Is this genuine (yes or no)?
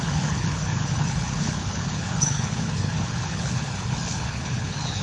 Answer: no